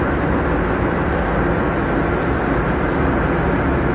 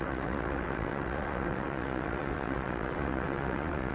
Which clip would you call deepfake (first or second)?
second